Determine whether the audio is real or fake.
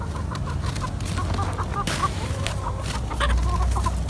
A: real